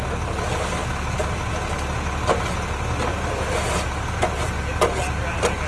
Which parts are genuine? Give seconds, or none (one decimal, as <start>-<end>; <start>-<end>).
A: 0.0-5.7